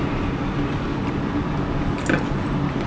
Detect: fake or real real